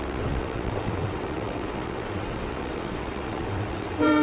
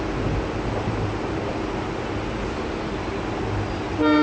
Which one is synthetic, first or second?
first